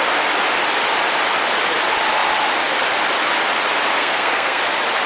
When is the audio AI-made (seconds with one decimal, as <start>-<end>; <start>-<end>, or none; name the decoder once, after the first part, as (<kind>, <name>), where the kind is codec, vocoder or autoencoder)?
4.0-4.6 (codec, SNAC)